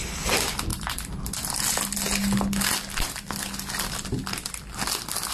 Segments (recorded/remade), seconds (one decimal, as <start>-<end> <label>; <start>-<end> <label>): 0.0-5.3 recorded